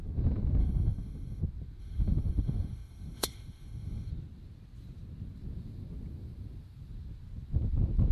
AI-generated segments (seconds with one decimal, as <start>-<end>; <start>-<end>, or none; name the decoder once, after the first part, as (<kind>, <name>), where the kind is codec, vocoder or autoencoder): 0.6-1.4 (autoencoder, DAC-VAE); 1.8-4.1